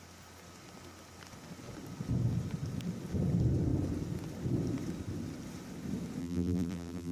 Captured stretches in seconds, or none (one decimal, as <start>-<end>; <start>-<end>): 0.0-6.2